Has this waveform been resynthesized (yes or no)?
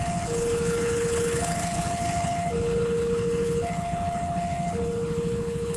yes